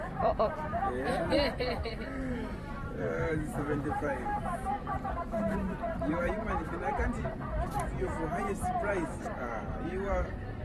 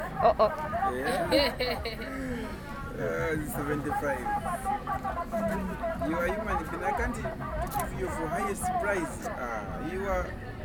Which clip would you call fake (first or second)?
first